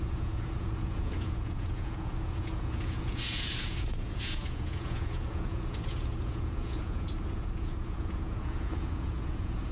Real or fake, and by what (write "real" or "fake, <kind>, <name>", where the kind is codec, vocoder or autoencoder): fake, vocoder, Vocos